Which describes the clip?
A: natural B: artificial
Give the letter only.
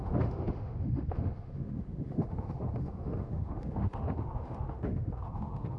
B